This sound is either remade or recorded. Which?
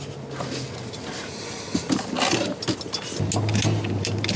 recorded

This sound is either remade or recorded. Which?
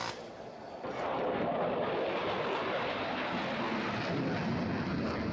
recorded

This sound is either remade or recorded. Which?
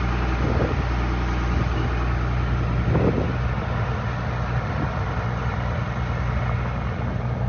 recorded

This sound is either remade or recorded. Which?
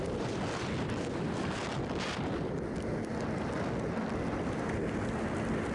recorded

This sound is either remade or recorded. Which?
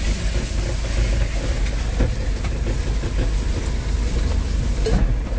recorded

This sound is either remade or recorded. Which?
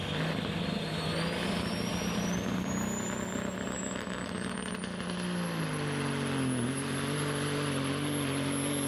recorded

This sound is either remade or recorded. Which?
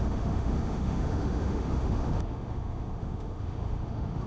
remade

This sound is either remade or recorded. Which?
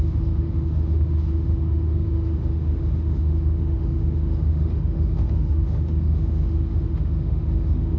remade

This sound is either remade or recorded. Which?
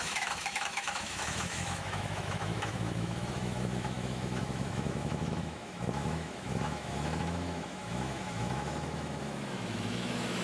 remade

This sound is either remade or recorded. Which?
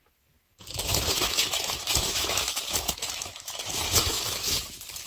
remade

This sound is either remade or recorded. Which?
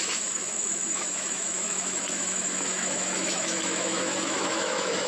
remade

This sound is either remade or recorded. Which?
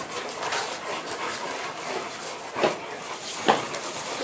recorded